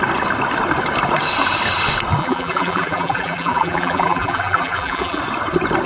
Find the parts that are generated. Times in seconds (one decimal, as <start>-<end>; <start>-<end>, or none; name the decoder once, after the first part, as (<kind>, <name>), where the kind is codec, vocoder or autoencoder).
2.2-5.2 (vocoder, BigVGAN v2)